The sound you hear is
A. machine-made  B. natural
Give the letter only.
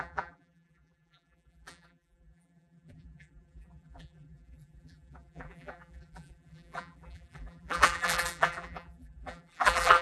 A